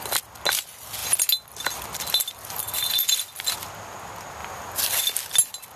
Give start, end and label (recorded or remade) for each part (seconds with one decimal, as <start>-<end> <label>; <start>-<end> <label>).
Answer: 0.0-4.4 recorded; 4.4-5.0 remade; 5.0-5.8 recorded